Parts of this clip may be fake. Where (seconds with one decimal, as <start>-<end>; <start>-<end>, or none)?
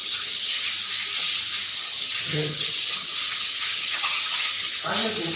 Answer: 0.0-0.7; 1.7-4.9